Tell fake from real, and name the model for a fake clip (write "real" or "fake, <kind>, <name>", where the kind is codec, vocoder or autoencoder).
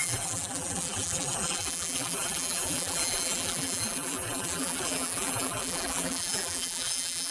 fake, vocoder, BigVGAN v2